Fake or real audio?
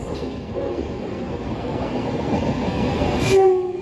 fake